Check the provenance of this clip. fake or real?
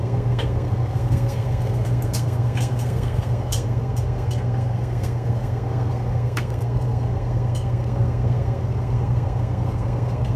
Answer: fake